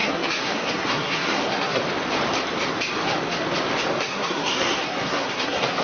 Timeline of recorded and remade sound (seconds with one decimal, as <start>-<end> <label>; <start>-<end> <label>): 0.0-1.8 remade; 1.8-4.0 recorded; 4.0-5.8 remade